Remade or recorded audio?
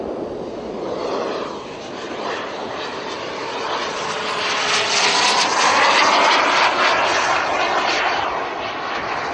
recorded